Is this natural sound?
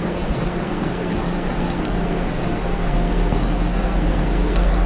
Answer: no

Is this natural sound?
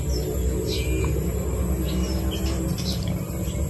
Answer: yes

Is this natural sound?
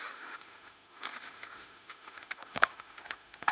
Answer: no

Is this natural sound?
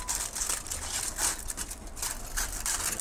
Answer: yes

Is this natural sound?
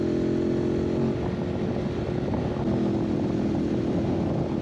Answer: yes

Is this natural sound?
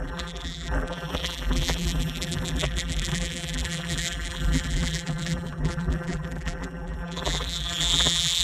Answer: no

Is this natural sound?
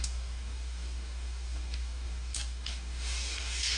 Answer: no